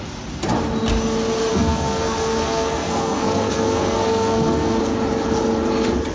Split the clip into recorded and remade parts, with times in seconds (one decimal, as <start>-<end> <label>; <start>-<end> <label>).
0.0-1.5 recorded; 1.5-4.8 remade; 4.8-6.1 recorded